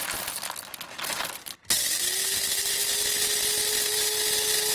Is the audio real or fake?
real